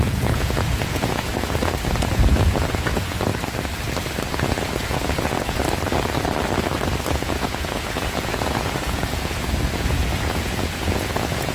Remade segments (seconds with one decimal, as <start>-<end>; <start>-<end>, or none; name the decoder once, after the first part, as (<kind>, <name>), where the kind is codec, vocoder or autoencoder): 0.0-1.3 (vocoder, Vocos); 1.9-3.3; 4.3-5.6; 7.1-11.5